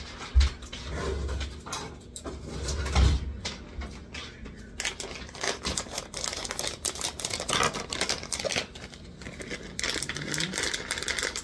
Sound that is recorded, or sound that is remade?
recorded